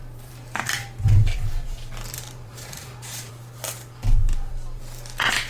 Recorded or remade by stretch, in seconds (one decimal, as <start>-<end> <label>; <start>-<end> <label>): 0.0-3.3 remade; 3.3-4.2 recorded; 4.2-4.8 remade; 4.8-5.5 recorded